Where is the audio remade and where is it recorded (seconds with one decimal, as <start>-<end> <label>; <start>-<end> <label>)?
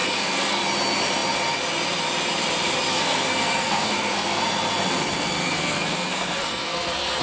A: 0.0-0.6 remade; 0.6-2.9 recorded; 2.9-4.4 remade; 4.4-5.4 recorded; 5.4-7.2 remade